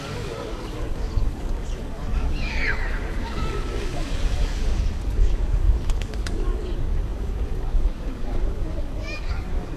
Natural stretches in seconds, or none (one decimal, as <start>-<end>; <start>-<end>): none